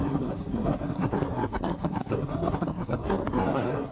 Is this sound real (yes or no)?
no